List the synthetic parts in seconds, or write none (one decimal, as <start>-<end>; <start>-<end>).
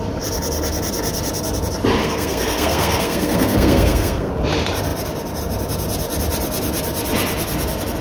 2.0-4.3